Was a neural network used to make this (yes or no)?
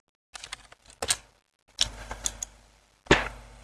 no